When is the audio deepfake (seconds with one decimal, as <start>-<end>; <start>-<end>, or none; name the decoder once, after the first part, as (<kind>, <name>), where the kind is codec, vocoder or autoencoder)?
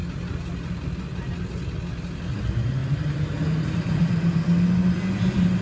none